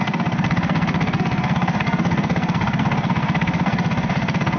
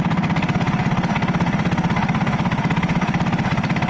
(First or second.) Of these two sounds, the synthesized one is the first